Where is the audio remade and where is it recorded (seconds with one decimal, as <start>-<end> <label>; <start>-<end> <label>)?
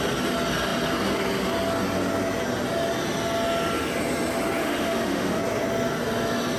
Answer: 0.0-4.6 recorded; 4.6-5.4 remade; 5.4-6.6 recorded